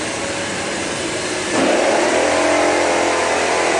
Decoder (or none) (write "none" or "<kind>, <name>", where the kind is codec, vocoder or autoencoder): none